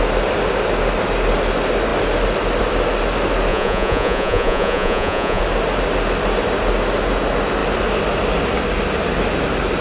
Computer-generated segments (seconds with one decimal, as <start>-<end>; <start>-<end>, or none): 3.5-5.4